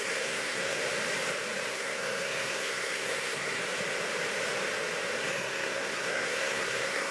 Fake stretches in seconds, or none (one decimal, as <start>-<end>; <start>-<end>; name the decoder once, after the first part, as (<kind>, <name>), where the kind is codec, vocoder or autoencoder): 0.0-0.8 (codec, SNAC); 1.7-3.6; 5.2-7.1